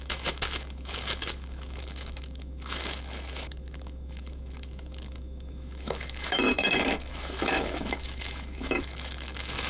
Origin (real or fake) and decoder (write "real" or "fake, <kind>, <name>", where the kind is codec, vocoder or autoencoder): fake, autoencoder, DAC-VAE